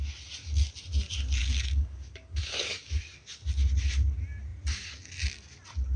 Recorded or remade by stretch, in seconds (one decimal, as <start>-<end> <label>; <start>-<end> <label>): 0.0-1.4 recorded; 1.4-3.0 remade; 3.0-6.0 recorded